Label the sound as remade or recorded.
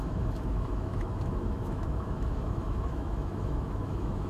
remade